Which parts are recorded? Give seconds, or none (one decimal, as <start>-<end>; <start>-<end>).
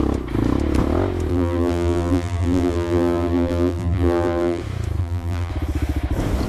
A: 0.0-1.3; 4.6-5.0; 5.5-6.5